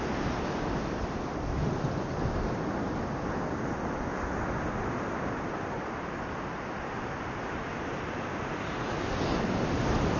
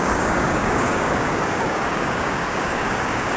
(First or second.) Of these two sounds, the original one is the first